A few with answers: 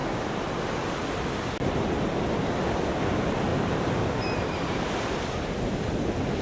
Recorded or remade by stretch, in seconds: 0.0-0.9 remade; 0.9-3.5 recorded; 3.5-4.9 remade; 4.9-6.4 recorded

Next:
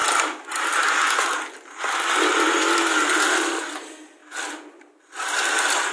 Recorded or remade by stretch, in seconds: 0.0-4.2 recorded; 4.2-5.2 remade; 5.2-5.9 recorded

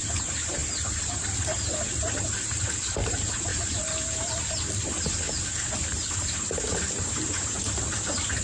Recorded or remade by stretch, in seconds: 0.0-8.4 recorded

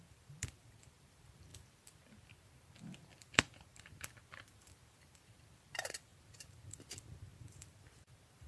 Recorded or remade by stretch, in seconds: 0.0-1.5 remade; 1.5-2.7 recorded; 2.7-8.5 remade